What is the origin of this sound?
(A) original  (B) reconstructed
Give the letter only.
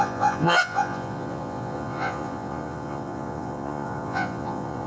B